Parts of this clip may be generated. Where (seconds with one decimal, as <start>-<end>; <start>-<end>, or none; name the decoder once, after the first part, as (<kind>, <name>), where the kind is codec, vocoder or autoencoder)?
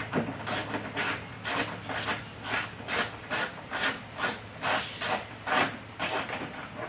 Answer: none